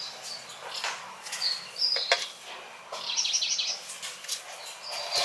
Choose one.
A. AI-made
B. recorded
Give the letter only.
B